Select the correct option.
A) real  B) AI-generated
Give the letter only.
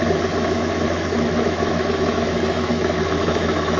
B